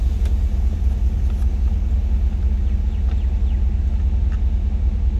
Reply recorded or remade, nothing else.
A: recorded